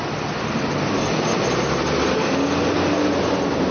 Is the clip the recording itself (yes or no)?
yes